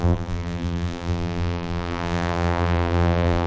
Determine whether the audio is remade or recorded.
remade